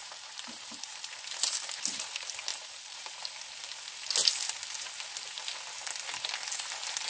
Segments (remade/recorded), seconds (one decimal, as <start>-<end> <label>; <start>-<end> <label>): 0.0-0.8 remade; 0.8-2.5 recorded; 2.5-3.2 remade; 3.2-7.1 recorded